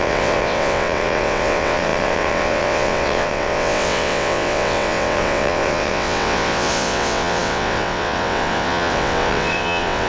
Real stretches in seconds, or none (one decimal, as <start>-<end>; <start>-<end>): none